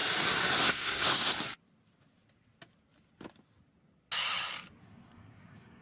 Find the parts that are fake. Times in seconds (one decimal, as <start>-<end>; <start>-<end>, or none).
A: 0.6-1.3; 4.8-5.8